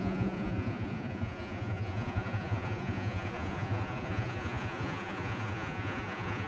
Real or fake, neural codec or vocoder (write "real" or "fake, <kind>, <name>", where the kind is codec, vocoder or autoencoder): fake, vocoder, Vocos